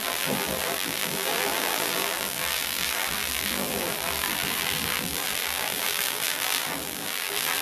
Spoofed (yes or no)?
yes